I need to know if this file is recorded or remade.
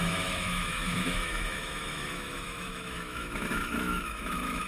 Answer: remade